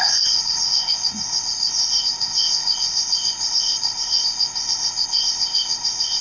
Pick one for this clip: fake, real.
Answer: fake